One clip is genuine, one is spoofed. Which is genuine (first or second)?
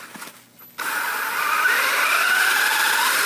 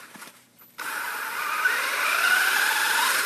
first